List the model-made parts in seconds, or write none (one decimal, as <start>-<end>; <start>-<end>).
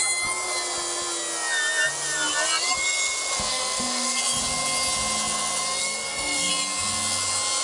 3.5-4.2; 5.8-6.5